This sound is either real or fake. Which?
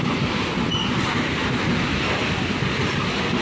real